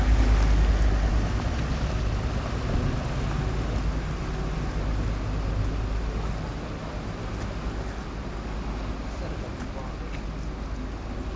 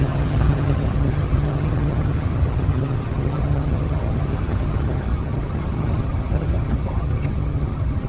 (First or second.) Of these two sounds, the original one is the first